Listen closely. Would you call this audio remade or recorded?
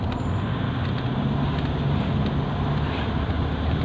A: recorded